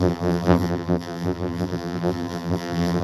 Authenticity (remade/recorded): remade